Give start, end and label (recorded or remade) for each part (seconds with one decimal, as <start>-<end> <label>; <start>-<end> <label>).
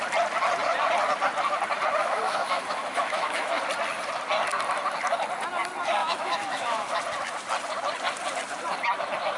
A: 0.0-2.0 recorded; 2.0-3.6 remade; 3.6-6.0 recorded; 6.0-7.0 remade; 7.0-9.4 recorded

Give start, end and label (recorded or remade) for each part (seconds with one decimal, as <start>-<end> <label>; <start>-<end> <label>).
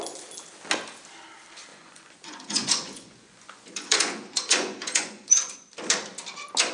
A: 0.0-1.7 recorded; 1.7-5.7 remade; 5.7-6.7 recorded